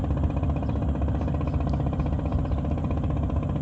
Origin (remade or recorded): recorded